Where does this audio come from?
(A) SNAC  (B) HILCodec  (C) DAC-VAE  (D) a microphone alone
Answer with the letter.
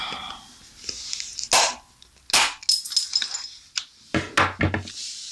D